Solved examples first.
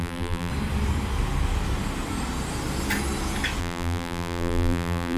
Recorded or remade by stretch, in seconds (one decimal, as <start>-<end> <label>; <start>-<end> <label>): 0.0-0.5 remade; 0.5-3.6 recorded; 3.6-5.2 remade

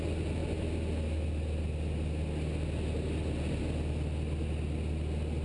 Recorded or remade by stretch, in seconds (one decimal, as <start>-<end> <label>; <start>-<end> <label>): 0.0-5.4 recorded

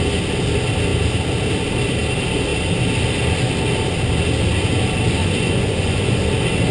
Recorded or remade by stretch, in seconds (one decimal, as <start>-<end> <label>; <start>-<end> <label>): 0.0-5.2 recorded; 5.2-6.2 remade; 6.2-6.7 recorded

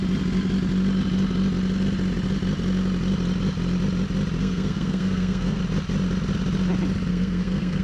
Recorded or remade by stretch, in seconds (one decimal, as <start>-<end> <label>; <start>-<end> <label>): 0.0-4.4 recorded; 4.4-5.6 remade; 5.6-7.1 recorded; 7.1-7.8 remade